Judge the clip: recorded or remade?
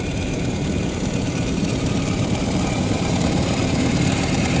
remade